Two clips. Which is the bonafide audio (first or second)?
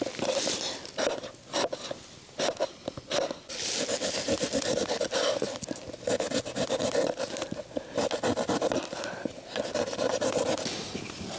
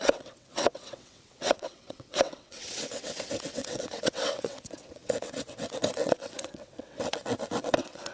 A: first